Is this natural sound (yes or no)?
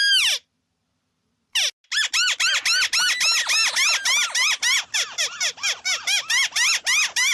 yes